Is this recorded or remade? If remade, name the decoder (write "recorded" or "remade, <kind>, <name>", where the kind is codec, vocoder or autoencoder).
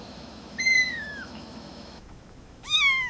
remade, autoencoder, DAC-VAE